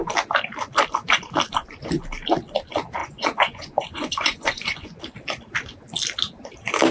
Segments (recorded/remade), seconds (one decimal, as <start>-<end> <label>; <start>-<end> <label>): 0.0-3.0 recorded; 3.0-5.0 remade; 5.0-6.9 recorded

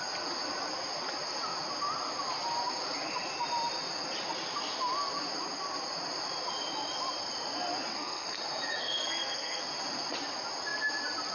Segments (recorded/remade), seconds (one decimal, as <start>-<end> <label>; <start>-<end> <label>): 0.0-7.9 recorded; 7.9-8.4 remade; 8.4-8.8 recorded; 8.8-9.6 remade; 9.6-11.3 recorded

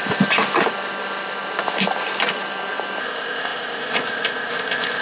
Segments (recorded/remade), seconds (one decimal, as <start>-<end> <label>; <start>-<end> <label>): 0.0-3.0 recorded; 3.0-5.0 remade